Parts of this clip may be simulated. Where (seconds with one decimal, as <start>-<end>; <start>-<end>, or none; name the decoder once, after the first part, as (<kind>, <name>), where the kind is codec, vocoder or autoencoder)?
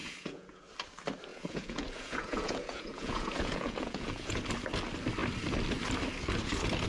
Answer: 0.0-0.6 (vocoder, Vocos); 1.3-4.4